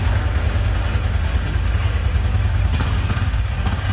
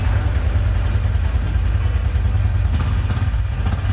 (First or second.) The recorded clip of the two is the second